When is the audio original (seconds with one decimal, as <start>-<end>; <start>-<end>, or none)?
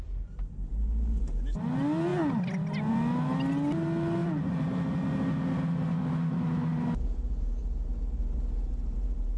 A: 0.0-9.4